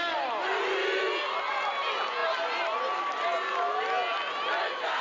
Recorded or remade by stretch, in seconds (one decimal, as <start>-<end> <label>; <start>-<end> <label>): 0.0-5.0 recorded